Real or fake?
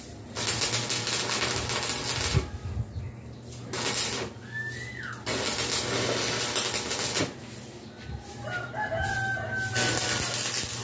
real